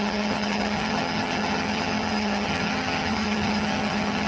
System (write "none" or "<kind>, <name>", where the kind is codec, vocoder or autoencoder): vocoder, HiFi-GAN